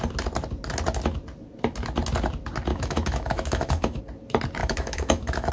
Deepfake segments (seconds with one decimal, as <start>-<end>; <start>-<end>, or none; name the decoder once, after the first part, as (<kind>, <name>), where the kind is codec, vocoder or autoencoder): 2.7-4.0 (autoencoder, DAC-VAE); 4.6-5.5